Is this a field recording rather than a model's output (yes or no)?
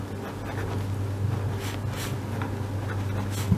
yes